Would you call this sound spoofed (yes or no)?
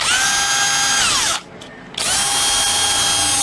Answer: no